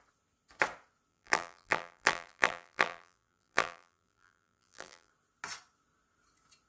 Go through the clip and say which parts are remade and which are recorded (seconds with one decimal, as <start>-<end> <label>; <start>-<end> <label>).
0.0-1.1 recorded; 1.1-5.1 remade; 5.1-6.7 recorded